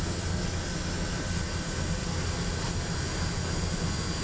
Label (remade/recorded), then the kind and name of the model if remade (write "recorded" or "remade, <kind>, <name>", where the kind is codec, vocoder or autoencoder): recorded